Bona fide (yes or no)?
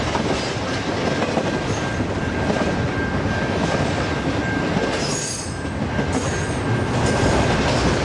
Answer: yes